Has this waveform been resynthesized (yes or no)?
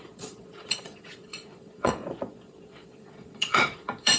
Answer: yes